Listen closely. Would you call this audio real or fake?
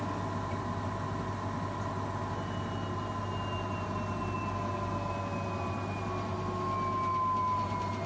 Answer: real